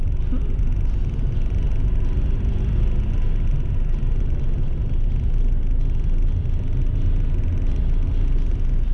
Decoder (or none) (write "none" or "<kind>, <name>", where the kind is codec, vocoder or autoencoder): none